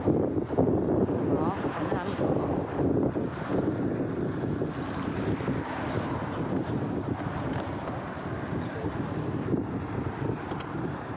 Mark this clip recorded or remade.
recorded